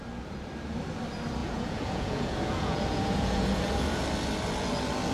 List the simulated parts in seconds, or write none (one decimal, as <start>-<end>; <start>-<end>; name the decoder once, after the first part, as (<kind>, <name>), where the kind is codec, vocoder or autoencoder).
1.4-4.0 (vocoder, Vocos)

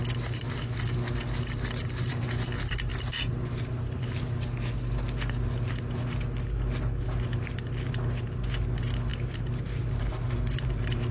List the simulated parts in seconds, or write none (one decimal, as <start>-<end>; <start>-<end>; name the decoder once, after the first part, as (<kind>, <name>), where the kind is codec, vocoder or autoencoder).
2.9-4.0 (vocoder, BigVGAN v2); 9.1-11.1

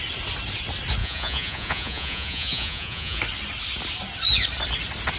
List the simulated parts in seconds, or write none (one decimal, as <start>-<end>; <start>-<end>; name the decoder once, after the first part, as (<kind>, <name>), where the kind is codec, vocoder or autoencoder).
1.0-3.2 (vocoder, Vocos)

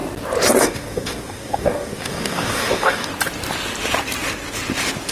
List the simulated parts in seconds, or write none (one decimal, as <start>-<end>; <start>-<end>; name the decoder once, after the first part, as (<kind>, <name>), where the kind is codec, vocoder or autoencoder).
0.6-3.1 (codec, DAC)